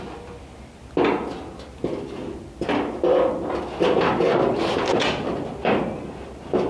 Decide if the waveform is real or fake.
real